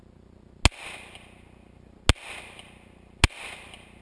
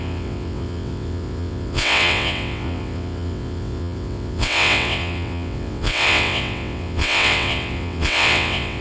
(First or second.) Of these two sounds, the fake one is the second